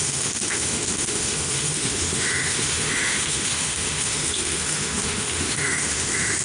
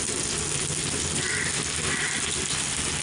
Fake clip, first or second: first